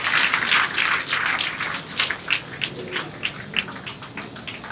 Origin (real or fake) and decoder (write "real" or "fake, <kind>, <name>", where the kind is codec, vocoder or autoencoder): real